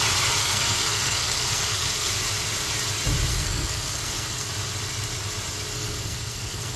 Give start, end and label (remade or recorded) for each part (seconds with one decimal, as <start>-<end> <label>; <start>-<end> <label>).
0.0-0.4 recorded; 0.4-2.1 remade; 2.1-3.3 recorded; 3.3-4.5 remade; 4.5-5.7 recorded; 5.7-6.8 remade